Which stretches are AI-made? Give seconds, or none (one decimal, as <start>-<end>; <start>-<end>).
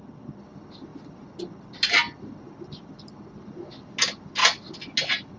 none